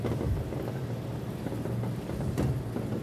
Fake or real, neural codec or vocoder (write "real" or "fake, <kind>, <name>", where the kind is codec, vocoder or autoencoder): real